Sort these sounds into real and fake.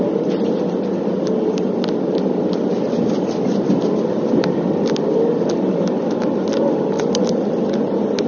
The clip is real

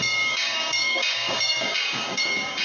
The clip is fake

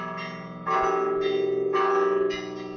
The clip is real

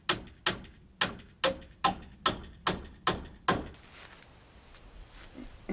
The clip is real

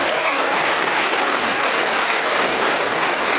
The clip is fake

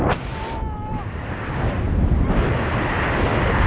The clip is real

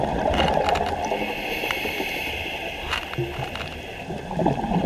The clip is real